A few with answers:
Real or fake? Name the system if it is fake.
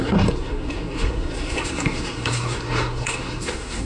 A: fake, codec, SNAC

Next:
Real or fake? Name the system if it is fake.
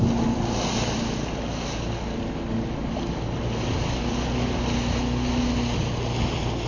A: real